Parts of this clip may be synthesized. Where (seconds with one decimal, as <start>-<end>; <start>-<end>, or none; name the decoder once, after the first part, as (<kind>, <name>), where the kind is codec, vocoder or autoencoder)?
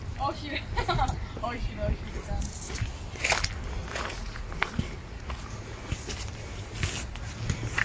3.8-4.5 (vocoder, Vocos); 5.0-5.9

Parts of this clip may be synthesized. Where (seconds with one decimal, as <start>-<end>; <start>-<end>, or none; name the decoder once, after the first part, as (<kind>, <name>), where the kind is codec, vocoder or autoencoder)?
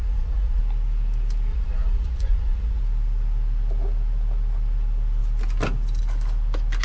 0.0-0.6 (vocoder, Vocos); 1.5-2.8